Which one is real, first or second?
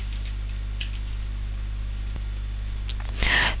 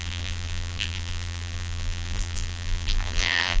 first